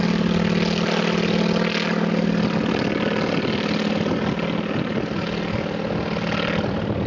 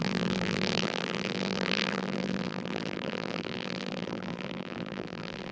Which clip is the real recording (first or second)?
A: first